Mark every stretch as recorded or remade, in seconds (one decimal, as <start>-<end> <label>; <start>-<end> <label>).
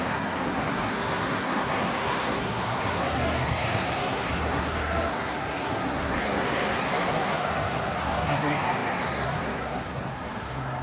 0.0-10.8 remade